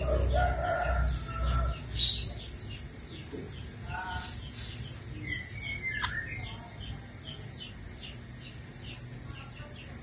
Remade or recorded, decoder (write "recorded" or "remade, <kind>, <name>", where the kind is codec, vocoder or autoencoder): recorded